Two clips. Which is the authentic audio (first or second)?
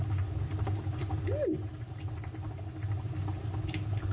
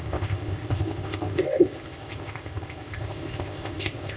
first